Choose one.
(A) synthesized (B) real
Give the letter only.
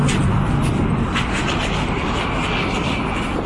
B